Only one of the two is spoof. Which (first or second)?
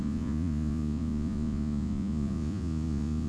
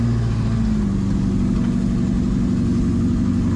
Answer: first